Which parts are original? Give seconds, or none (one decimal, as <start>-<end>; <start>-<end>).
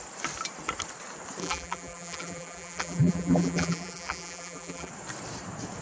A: 0.0-1.4; 4.9-5.8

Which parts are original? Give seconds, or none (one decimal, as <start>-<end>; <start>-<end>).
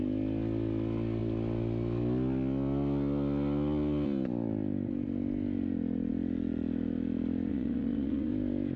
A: 0.0-7.5; 8.3-8.8